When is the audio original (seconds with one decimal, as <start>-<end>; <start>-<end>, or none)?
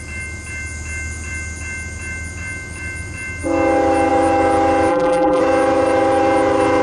0.0-4.9; 5.4-6.8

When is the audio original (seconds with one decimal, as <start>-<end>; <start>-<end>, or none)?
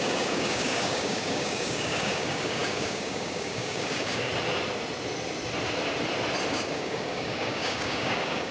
4.3-6.5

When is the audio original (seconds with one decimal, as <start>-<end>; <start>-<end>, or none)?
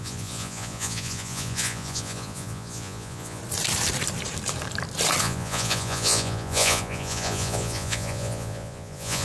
3.4-5.2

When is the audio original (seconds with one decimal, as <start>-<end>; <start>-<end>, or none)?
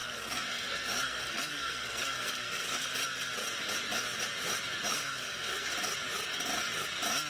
2.9-4.9; 5.7-7.3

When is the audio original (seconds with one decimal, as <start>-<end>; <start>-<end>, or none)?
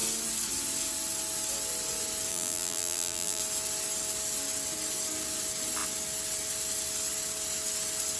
0.0-2.3; 3.4-8.2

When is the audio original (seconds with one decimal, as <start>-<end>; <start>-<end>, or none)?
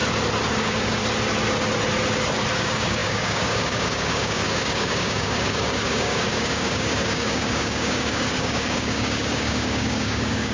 0.0-0.6; 1.0-2.6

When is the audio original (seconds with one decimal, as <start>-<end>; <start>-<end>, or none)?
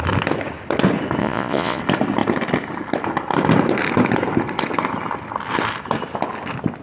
0.0-1.2; 1.8-6.8